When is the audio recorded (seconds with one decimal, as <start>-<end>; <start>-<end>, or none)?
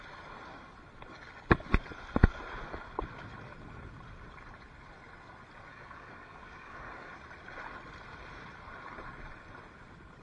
0.0-5.7; 7.1-10.2